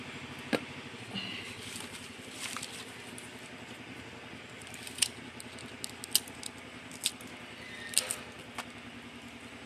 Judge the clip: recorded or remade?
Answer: recorded